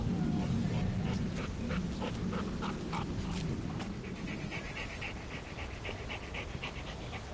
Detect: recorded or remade recorded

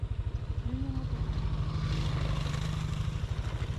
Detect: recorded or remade recorded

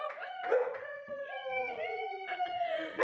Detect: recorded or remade remade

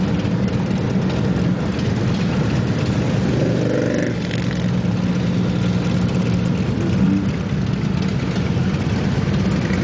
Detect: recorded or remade recorded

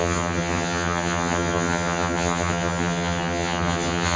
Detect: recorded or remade remade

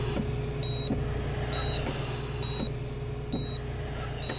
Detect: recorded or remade recorded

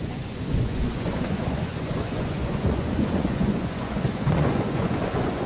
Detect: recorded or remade remade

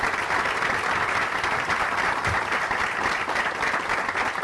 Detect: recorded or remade recorded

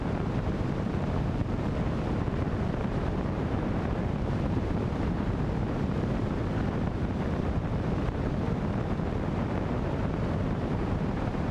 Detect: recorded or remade remade